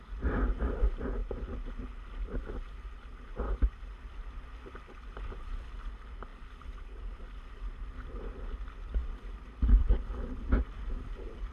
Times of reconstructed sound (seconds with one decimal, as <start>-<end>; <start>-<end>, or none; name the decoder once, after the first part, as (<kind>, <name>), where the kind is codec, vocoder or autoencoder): none